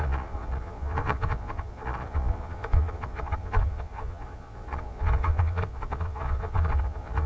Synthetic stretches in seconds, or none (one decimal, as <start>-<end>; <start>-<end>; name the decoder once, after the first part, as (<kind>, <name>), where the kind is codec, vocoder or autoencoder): 0.0-7.3 (vocoder, Vocos)